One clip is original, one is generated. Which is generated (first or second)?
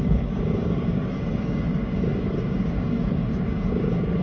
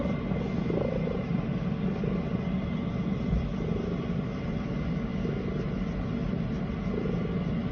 first